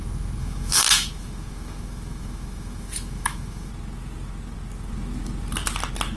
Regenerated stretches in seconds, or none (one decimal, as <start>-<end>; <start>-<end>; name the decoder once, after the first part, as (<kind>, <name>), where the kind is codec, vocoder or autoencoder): 0.0-3.7 (autoencoder, DAC-VAE)